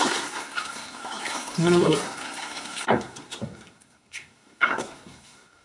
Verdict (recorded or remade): remade